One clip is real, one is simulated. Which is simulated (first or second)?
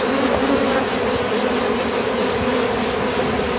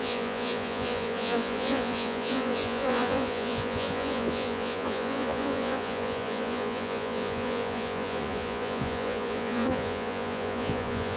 second